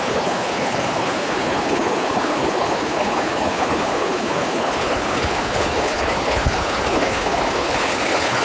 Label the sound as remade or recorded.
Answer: remade